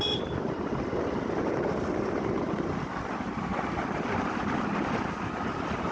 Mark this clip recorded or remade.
recorded